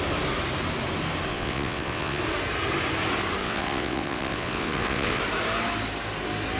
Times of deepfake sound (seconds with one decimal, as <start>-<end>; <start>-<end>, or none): 1.3-2.2; 3.4-5.2